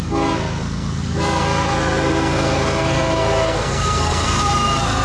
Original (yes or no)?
no